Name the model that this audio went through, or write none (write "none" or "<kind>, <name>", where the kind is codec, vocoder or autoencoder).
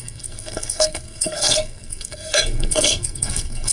codec, SNAC